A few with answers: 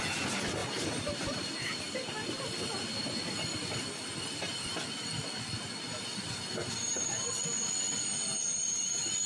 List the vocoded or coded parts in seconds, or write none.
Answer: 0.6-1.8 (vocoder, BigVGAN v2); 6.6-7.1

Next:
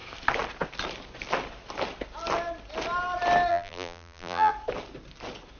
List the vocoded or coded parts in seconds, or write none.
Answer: 3.5-4.5 (vocoder, BigVGAN v2)

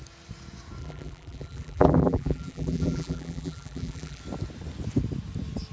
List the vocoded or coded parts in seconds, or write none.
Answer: 0.8-4.2 (vocoder, BigVGAN v2)

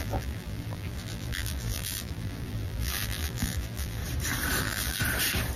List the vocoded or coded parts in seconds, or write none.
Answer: 0.0-4.0 (vocoder, BigVGAN v2); 4.6-5.0